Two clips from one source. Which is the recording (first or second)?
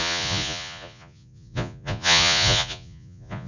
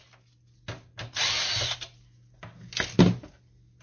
second